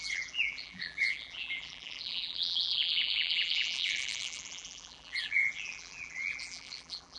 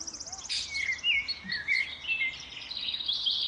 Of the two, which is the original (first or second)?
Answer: second